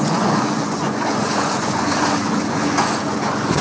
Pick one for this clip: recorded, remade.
remade